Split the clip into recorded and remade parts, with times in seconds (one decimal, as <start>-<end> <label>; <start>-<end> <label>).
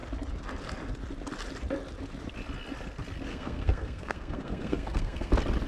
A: 0.0-3.3 recorded; 3.3-5.3 remade; 5.3-5.7 recorded